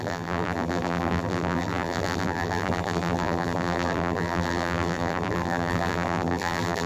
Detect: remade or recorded remade